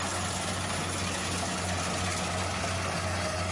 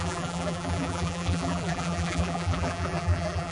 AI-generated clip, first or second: second